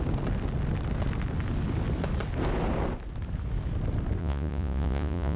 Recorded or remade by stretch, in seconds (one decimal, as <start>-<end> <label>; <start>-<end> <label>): 0.0-4.2 recorded; 4.2-5.4 remade